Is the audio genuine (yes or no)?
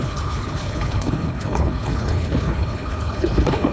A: no